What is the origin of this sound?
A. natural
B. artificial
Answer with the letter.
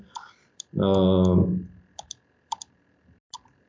A